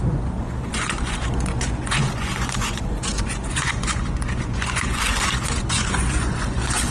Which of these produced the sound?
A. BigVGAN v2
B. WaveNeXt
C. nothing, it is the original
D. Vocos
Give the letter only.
D